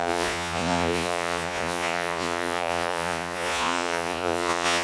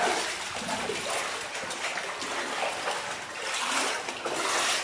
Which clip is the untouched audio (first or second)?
second